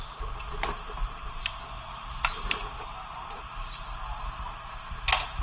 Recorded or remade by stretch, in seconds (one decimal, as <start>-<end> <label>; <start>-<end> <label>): 0.0-5.4 recorded